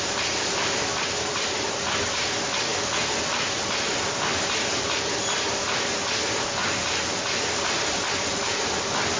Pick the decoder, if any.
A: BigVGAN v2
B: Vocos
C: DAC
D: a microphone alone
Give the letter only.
A